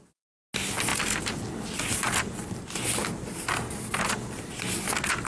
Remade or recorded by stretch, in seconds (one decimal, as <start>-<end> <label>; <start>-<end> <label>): 0.0-5.3 recorded